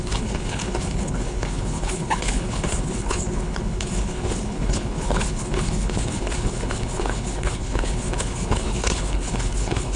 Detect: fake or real fake